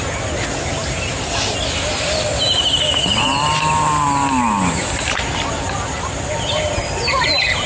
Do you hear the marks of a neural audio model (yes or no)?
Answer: no